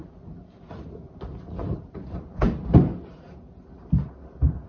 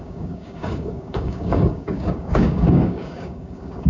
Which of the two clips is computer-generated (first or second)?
second